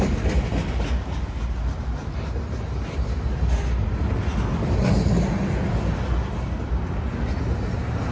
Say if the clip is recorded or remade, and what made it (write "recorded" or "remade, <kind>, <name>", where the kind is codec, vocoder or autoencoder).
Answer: recorded